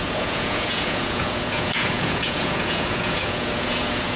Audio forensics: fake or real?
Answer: fake